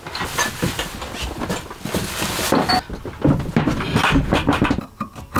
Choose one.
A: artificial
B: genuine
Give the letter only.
B